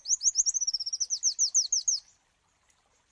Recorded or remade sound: recorded